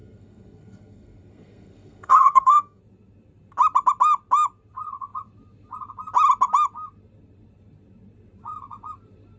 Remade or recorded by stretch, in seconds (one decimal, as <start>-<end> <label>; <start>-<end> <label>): 0.0-2.8 remade; 2.8-9.4 recorded